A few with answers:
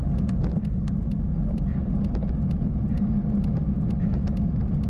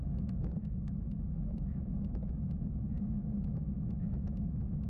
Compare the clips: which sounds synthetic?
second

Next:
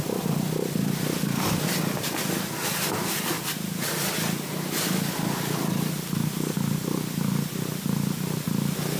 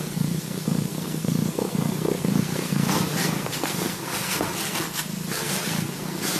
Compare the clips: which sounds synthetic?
second